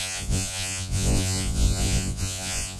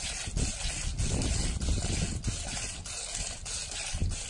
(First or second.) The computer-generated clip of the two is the first